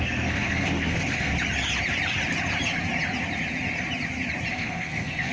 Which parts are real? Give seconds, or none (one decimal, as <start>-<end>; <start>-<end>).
1.3-4.5